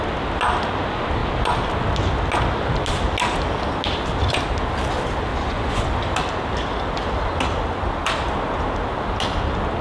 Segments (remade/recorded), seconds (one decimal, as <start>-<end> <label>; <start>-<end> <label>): 0.0-5.3 recorded; 5.3-5.9 remade; 5.9-9.8 recorded